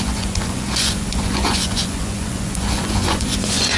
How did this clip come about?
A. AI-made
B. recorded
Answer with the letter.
A